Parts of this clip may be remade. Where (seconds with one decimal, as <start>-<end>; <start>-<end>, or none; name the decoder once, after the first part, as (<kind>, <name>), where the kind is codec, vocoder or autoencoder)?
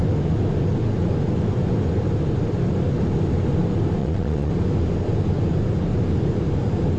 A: 4.0-4.5 (vocoder, Vocos)